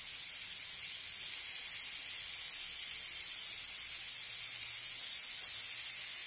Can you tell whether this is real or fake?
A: real